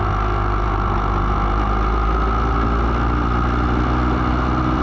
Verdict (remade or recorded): recorded